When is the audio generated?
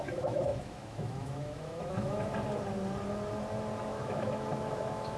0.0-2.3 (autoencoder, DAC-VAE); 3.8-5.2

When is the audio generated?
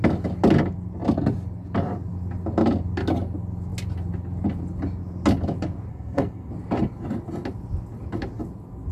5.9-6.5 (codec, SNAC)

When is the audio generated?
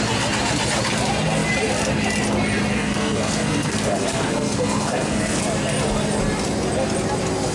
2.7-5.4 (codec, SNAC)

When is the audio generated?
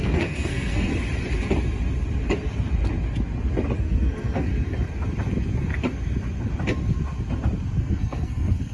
0.0-0.9 (codec, SNAC); 3.8-4.5; 7.8-8.7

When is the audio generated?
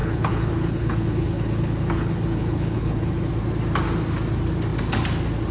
0.0-3.3 (codec, HILCodec)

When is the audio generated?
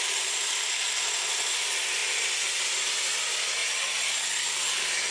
0.0-2.0 (vocoder, BigVGAN v2); 3.2-5.1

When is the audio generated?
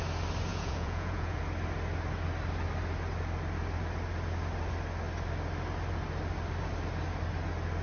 0.5-1.4 (vocoder, Vocos)